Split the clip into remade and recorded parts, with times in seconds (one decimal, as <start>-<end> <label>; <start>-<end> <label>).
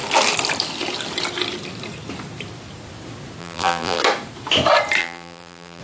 0.0-3.4 recorded; 3.4-4.0 remade; 4.0-5.0 recorded; 5.0-5.8 remade